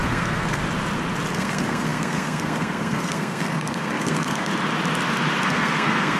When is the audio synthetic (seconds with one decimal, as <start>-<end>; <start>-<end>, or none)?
0.0-0.6; 1.3-4.5; 5.4-6.2